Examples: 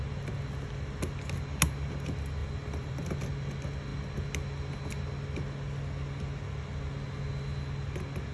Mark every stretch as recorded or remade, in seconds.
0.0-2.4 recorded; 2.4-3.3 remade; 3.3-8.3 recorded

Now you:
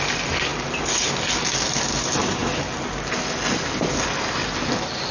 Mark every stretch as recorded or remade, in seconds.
0.0-5.1 recorded

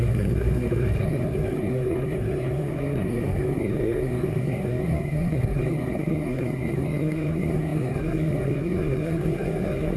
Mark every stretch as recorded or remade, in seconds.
0.0-10.0 remade

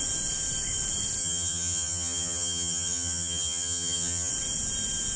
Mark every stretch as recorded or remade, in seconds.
0.0-1.2 recorded; 1.2-4.3 remade; 4.3-5.2 recorded